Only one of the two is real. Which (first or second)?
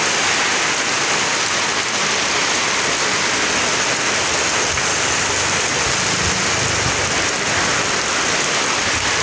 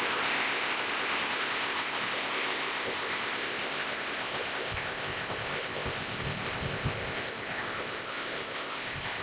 first